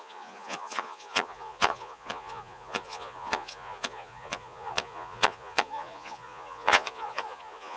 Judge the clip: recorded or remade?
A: remade